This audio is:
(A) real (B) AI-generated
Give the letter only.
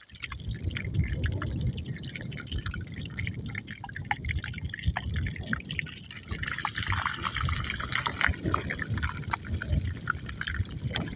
A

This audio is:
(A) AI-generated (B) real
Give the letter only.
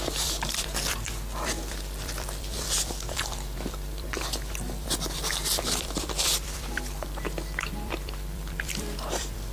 A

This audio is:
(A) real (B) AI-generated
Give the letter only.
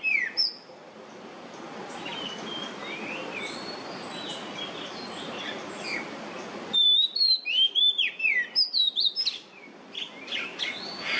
A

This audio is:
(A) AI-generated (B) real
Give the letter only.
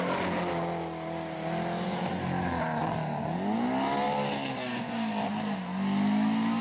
B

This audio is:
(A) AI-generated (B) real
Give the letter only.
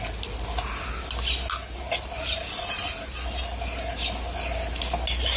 B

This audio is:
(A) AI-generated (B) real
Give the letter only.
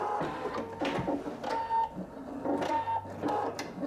B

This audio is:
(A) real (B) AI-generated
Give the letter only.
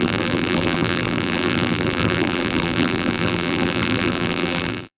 B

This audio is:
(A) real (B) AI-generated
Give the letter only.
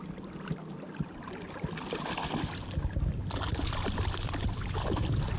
A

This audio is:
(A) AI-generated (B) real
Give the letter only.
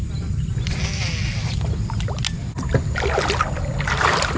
B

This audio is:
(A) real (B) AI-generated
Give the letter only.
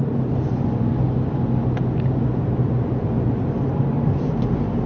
B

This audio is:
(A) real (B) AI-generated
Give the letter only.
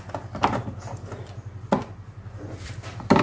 A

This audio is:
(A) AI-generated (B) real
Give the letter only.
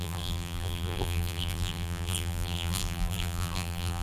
A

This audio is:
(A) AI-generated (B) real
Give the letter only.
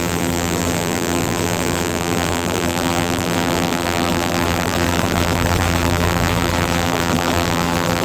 A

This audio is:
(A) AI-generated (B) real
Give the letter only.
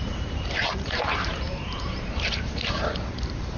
A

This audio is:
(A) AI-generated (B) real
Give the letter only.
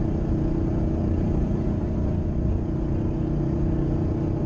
A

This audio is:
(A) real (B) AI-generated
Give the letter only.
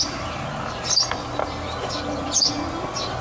A